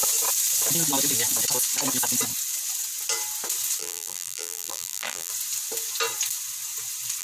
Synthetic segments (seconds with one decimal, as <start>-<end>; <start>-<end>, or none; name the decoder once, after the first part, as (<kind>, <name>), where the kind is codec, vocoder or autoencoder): 3.8-5.3 (vocoder, BigVGAN v2)